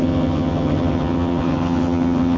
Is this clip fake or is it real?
fake